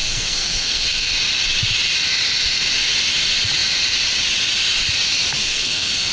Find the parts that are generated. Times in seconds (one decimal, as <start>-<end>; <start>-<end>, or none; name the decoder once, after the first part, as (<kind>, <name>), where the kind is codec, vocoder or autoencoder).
0.0-1.1 (codec, SNAC); 5.4-6.1